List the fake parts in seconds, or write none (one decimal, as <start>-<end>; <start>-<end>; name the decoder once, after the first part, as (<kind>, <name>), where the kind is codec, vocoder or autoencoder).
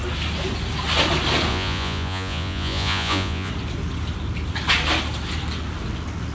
1.5-3.5 (vocoder, Vocos)